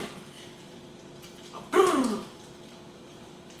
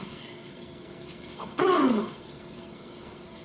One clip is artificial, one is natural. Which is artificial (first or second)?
second